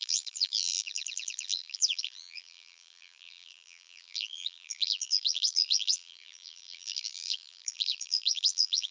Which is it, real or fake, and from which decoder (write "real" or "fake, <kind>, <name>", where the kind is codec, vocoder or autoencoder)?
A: fake, vocoder, BigVGAN v2